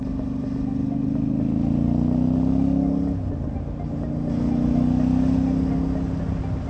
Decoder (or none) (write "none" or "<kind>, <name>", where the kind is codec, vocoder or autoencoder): none